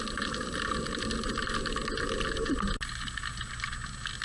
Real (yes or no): yes